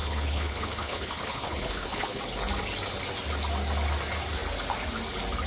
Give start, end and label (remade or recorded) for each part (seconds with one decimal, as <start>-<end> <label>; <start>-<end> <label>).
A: 0.0-2.2 remade; 2.2-5.5 recorded